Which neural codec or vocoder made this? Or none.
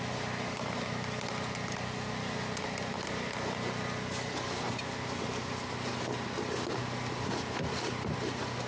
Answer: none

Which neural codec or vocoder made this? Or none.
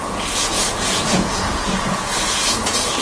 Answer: vocoder, Vocos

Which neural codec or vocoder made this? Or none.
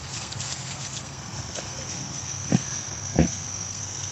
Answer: codec, SNAC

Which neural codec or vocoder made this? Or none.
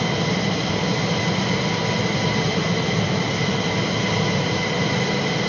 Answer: none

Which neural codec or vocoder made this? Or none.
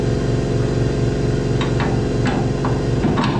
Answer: none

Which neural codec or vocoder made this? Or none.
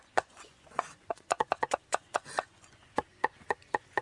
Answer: vocoder, Vocos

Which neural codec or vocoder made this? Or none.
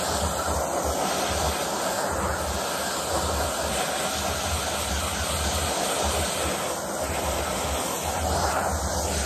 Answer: none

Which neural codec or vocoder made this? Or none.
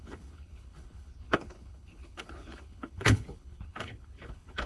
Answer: codec, HILCodec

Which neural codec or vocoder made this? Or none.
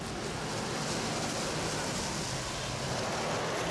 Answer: none